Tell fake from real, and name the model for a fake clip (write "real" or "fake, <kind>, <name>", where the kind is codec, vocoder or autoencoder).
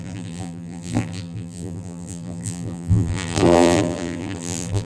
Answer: fake, vocoder, BigVGAN v2